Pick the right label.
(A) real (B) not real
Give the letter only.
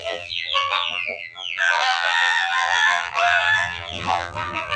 B